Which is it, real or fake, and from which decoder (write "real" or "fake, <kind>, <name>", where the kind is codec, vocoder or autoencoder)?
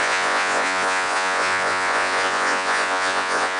fake, vocoder, Vocos